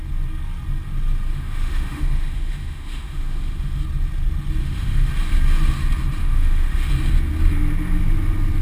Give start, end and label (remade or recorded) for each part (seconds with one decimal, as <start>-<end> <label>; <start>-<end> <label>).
0.0-1.3 recorded; 1.3-3.8 remade; 3.8-4.6 recorded; 4.6-5.1 remade; 5.1-6.2 recorded; 6.2-6.9 remade; 6.9-8.6 recorded